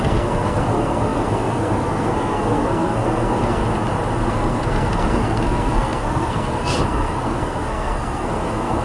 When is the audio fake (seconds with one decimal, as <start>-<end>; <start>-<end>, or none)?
0.0-3.6; 4.3-8.8